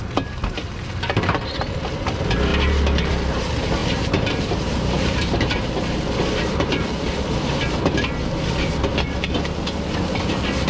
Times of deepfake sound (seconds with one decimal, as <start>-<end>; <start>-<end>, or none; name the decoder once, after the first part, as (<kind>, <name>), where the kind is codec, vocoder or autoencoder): 3.8-7.2 (vocoder, BigVGAN v2)